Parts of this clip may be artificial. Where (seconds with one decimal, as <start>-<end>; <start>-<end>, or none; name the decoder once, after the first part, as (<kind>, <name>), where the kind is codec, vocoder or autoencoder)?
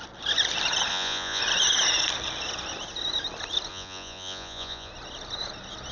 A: 0.9-1.4 (vocoder, Vocos); 3.7-4.9